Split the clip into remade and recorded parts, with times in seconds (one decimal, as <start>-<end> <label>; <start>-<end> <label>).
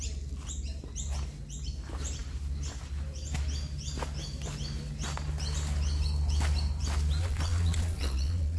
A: 0.0-7.2 recorded; 7.2-8.6 remade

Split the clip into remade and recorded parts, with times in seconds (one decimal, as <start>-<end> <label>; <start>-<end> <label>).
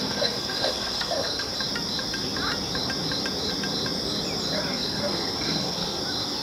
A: 0.0-1.5 remade; 1.5-4.7 recorded; 4.7-6.0 remade; 6.0-6.4 recorded